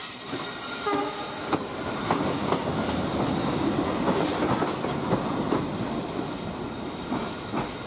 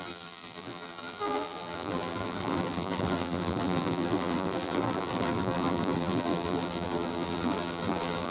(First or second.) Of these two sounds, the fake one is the second